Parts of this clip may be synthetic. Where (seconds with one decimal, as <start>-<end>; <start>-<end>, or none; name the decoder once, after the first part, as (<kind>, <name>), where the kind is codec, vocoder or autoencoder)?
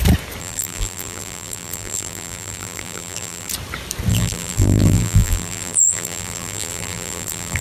0.4-3.5 (vocoder, BigVGAN v2); 4.1-7.6